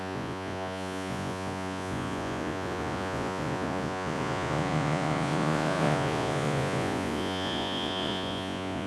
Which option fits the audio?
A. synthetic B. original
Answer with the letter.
A